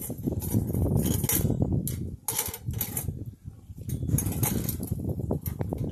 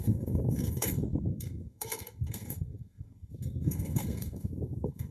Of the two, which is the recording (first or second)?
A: first